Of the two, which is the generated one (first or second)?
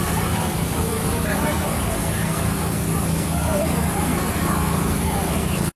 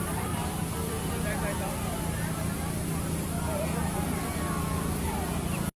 first